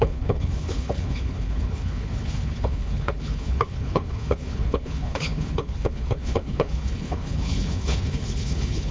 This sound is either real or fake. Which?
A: fake